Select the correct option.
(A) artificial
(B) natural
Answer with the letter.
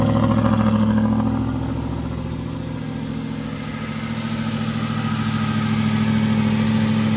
B